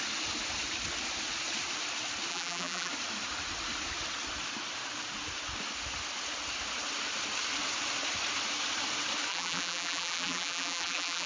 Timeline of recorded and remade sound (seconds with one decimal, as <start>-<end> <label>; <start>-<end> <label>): 0.0-2.3 recorded; 2.3-2.9 remade; 2.9-9.3 recorded; 9.3-11.3 remade

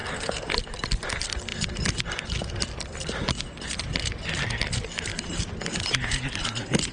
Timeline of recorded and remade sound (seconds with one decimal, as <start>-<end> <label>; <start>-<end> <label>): 0.0-6.9 recorded